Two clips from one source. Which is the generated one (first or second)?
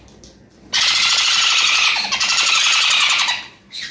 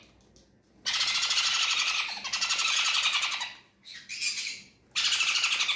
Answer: first